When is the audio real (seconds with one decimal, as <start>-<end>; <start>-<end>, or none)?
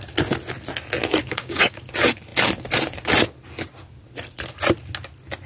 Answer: 0.0-1.2; 1.8-5.5